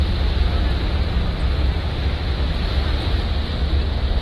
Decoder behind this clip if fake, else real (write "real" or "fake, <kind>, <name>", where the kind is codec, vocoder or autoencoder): real